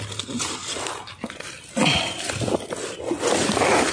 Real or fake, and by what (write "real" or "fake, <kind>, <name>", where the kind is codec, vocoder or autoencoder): real